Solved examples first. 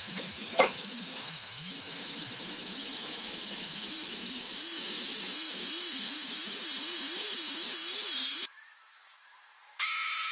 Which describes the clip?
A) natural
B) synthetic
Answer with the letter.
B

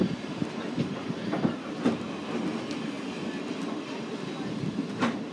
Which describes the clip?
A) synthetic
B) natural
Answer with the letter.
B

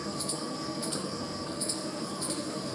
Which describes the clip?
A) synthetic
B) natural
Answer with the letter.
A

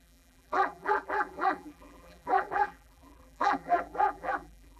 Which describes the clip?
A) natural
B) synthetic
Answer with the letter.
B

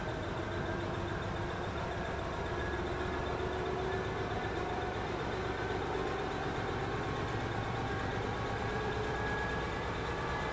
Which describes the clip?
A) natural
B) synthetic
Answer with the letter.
B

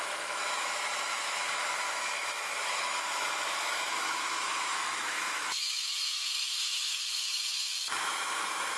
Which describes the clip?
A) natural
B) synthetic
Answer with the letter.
B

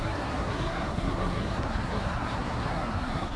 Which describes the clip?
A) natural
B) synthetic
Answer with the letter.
B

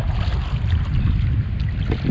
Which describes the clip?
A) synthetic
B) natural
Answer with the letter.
B